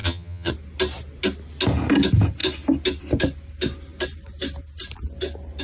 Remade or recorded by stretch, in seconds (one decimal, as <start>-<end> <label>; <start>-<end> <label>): 0.0-0.5 remade; 0.5-5.6 recorded